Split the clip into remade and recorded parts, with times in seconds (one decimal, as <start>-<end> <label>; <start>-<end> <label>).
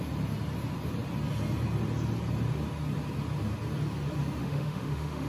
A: 0.0-4.4 recorded; 4.4-5.3 remade